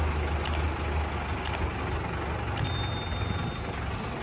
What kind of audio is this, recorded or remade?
recorded